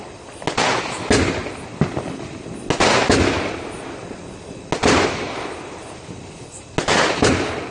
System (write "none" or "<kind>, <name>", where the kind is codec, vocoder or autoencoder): none